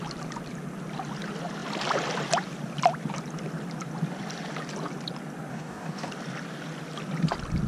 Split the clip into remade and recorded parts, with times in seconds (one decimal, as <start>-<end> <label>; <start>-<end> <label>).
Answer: 0.0-5.5 recorded; 5.5-6.1 remade; 6.1-7.7 recorded